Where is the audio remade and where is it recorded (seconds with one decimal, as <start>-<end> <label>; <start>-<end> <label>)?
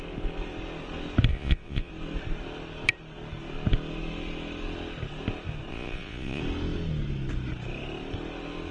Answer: 0.0-1.3 recorded; 1.3-1.9 remade; 1.9-5.7 recorded; 5.7-6.4 remade; 6.4-8.7 recorded